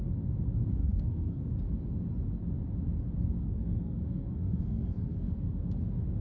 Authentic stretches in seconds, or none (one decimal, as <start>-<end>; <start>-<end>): 0.0-0.8; 1.4-3.4; 5.5-6.2